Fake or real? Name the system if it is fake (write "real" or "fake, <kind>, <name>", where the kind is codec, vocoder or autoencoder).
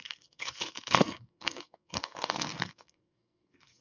fake, codec, SNAC